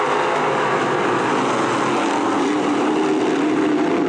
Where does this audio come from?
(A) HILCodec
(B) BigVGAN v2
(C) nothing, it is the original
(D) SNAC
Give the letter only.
C